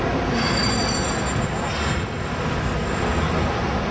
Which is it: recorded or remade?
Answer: recorded